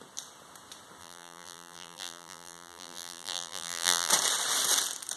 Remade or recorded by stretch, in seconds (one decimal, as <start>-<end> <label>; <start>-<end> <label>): 0.0-1.0 recorded; 1.0-4.1 remade; 4.1-5.2 recorded